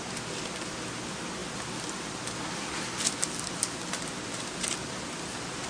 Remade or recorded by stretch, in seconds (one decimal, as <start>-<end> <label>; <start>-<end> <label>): 0.0-5.7 recorded